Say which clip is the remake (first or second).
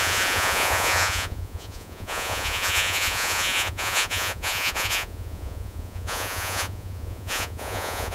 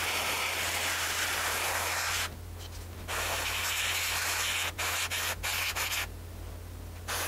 first